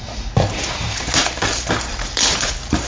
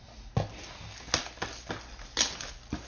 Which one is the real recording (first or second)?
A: second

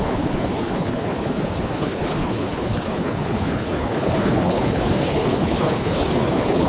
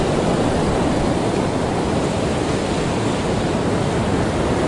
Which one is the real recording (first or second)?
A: second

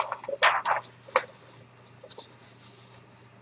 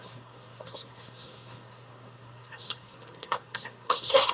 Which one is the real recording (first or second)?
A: first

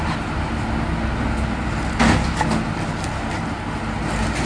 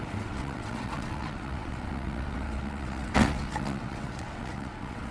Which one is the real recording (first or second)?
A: first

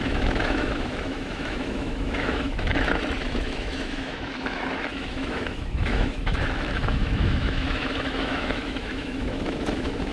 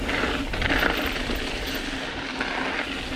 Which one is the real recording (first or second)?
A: second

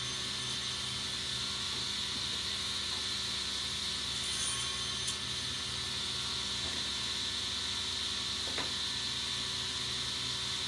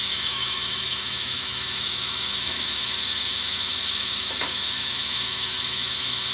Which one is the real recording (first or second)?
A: first